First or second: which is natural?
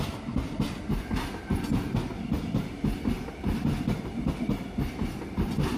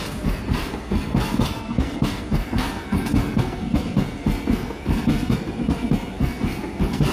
first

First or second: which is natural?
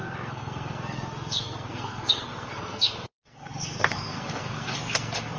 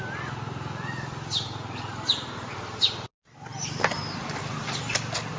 second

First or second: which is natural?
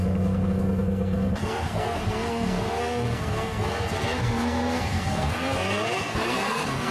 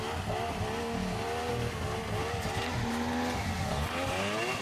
second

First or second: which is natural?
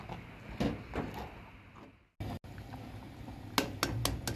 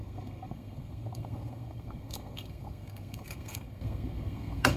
first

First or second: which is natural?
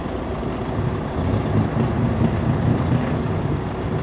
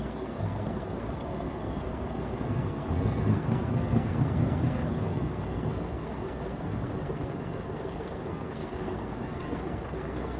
first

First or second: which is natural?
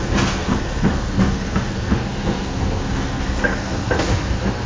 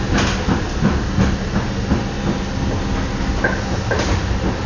second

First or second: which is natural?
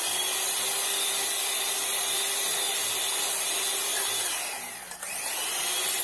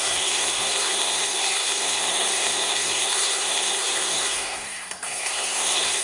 first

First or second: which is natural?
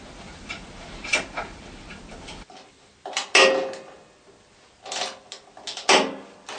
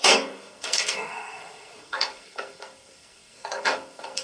first